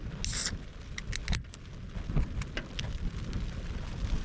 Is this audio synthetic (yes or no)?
no